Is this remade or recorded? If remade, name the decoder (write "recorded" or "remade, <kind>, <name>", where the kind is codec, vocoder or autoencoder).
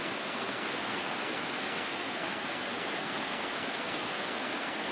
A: remade, codec, SNAC